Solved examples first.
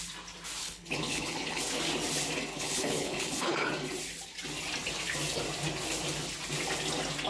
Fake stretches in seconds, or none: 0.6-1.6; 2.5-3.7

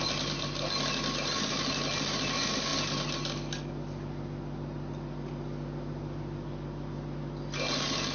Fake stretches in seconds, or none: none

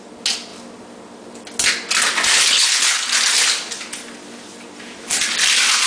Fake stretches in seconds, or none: 2.3-3.0

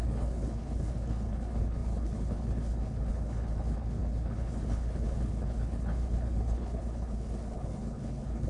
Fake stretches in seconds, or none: 0.0-8.5